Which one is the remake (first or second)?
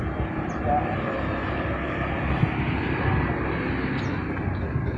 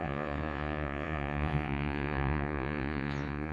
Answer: second